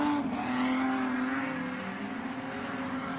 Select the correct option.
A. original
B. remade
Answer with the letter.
A